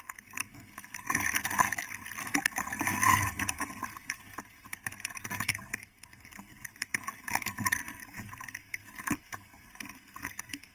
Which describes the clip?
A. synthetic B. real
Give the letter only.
A